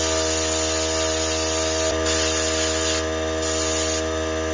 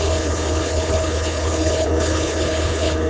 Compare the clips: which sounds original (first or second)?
first